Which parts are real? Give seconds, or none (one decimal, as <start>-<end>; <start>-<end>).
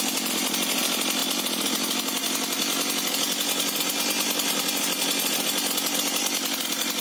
0.0-7.0